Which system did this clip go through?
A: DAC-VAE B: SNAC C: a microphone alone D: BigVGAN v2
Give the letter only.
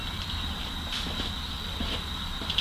C